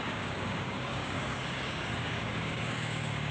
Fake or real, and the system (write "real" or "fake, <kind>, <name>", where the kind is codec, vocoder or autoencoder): fake, codec, DAC